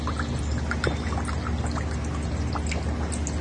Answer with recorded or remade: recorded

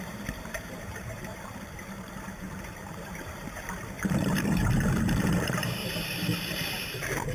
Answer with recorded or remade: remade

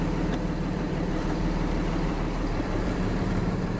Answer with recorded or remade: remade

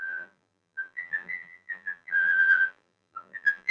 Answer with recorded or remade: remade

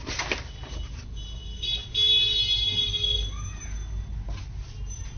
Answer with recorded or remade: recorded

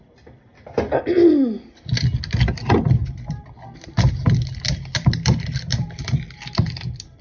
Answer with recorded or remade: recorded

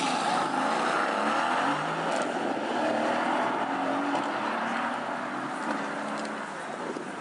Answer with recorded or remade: recorded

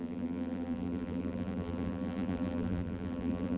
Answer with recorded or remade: remade